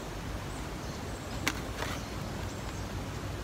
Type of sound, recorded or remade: recorded